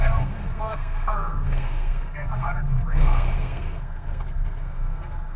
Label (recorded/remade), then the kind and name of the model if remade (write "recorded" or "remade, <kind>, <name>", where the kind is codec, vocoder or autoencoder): remade, codec, SNAC